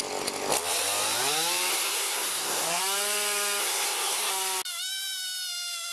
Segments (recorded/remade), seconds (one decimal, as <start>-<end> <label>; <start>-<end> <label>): 0.0-1.7 recorded; 1.7-2.8 remade; 2.8-3.6 recorded; 3.6-4.3 remade; 4.3-5.9 recorded